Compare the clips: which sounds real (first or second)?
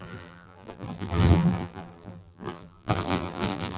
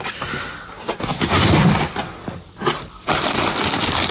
second